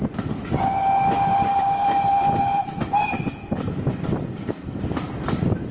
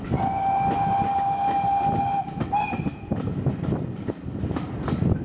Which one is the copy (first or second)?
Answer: first